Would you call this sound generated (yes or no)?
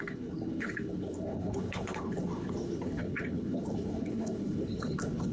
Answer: yes